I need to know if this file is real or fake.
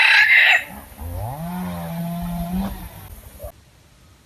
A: real